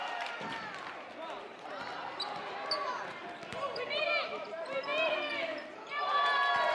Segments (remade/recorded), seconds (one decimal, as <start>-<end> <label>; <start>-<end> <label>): 0.0-4.0 remade; 4.0-4.9 recorded; 4.9-6.7 remade